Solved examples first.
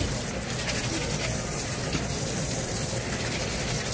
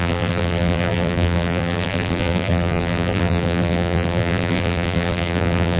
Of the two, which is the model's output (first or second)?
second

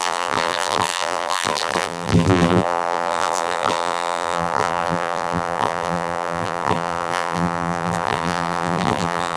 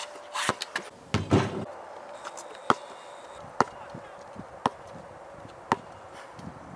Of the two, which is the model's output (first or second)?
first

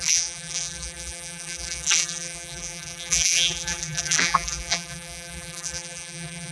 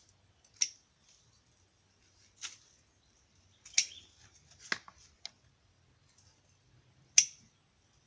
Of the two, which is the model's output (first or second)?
first